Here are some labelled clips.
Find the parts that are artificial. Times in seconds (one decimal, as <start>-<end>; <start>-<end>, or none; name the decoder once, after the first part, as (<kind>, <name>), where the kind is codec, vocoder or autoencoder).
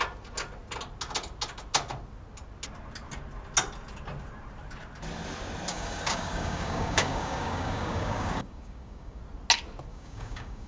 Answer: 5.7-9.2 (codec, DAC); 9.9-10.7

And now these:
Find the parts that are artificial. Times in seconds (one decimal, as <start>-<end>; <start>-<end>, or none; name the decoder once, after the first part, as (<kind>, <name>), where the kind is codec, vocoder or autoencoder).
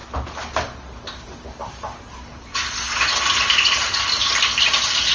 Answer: none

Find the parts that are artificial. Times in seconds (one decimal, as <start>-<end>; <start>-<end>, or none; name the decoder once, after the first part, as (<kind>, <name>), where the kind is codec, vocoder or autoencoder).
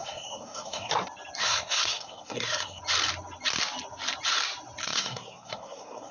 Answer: 0.0-0.9 (codec, SNAC); 1.4-2.8; 4.8-6.1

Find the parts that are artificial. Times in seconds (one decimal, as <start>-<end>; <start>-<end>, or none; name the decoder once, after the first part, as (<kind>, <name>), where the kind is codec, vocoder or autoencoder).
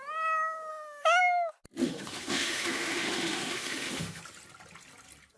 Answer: 0.7-1.2 (autoencoder, DAC-VAE); 1.8-4.2